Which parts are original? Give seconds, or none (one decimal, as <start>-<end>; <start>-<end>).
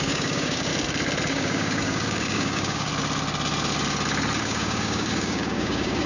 0.7-1.3; 2.9-4.4